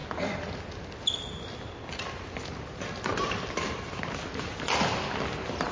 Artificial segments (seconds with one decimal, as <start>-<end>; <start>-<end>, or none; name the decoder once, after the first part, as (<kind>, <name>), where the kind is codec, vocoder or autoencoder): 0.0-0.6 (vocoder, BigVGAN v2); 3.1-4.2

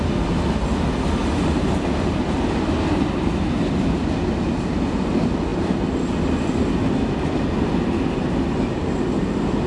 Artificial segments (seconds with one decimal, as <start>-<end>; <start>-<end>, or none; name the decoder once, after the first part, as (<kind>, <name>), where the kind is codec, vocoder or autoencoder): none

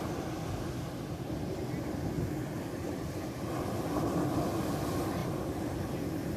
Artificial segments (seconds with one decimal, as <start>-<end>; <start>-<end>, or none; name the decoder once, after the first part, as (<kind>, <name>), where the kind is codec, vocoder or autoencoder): none

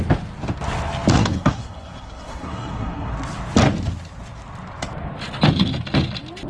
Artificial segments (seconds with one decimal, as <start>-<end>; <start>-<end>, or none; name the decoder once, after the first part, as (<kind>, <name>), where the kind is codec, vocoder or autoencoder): 1.1-3.1 (codec, SNAC)

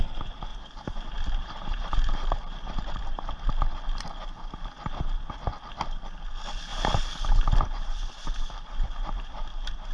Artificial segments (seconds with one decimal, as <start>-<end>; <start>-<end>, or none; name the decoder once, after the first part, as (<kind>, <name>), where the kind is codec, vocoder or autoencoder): 0.5-3.3 (vocoder, BigVGAN v2)